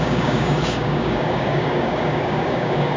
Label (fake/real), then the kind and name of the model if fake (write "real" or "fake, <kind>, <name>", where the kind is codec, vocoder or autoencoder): fake, codec, DAC